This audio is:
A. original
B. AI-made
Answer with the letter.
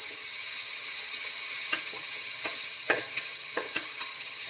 B